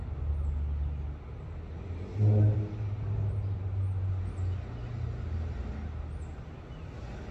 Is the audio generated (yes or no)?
no